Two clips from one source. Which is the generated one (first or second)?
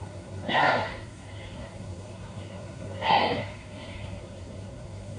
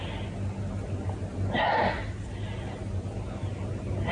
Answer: first